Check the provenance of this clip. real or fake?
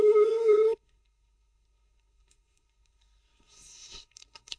fake